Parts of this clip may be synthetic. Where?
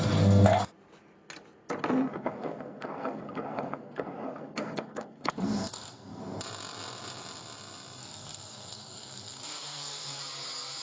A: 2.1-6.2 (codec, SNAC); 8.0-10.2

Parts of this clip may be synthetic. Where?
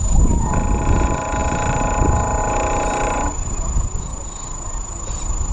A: none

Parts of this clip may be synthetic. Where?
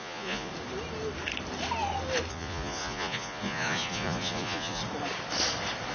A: 0.0-0.5 (vocoder, Vocos); 2.3-4.8